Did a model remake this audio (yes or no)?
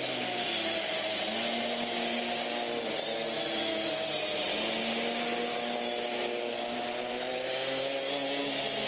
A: no